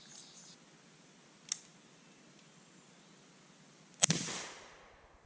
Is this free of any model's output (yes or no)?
yes